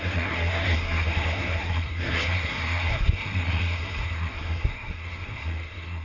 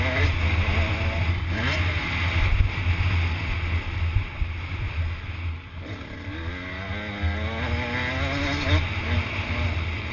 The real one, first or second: second